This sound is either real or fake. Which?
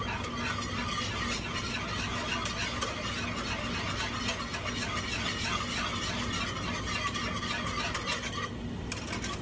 real